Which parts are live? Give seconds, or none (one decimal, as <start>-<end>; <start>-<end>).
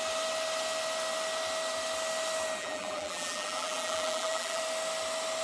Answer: 0.0-2.6; 4.6-5.4